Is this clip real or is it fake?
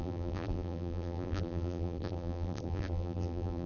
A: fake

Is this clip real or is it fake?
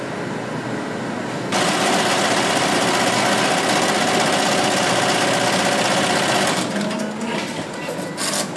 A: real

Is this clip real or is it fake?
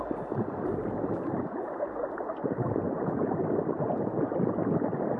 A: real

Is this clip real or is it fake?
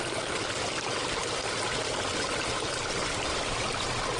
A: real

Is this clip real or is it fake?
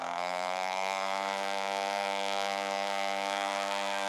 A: fake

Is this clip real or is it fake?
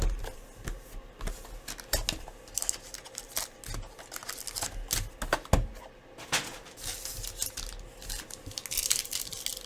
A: real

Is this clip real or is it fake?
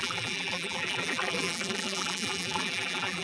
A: fake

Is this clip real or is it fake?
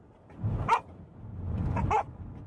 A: real